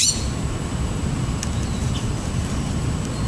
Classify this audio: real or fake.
real